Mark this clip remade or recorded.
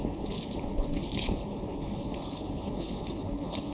remade